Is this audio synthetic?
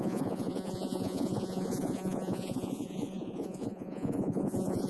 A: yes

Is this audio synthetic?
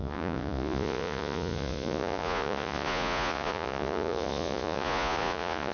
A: yes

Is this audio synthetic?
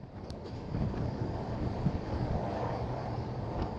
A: yes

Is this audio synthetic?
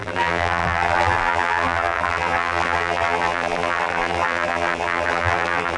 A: yes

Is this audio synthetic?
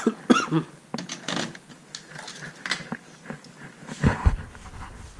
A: no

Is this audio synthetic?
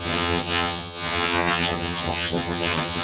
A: yes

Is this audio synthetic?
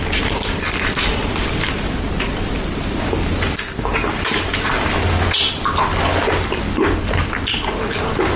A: no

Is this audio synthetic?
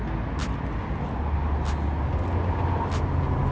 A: no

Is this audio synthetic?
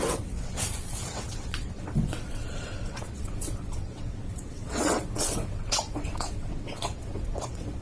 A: yes